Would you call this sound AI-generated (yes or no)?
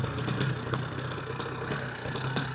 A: yes